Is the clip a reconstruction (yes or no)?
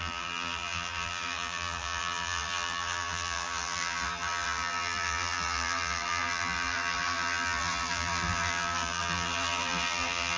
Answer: yes